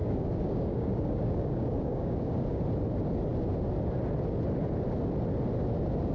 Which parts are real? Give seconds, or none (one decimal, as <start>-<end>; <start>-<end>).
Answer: 2.6-6.1